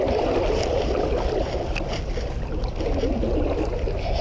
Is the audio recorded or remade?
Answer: recorded